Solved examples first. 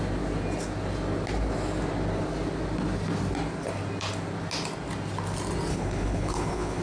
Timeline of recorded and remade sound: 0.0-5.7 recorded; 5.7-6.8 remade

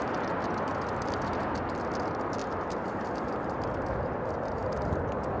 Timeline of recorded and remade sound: 0.0-2.4 recorded; 2.4-3.5 remade; 3.5-5.4 recorded

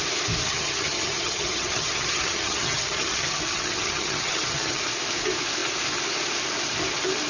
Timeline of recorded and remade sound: 0.0-0.4 recorded; 0.4-4.8 remade; 4.8-7.3 recorded

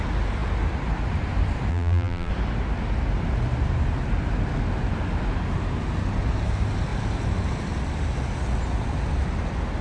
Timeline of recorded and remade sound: 0.0-1.7 recorded; 1.7-2.3 remade; 2.3-9.8 recorded